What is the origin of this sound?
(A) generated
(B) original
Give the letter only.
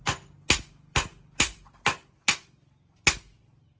B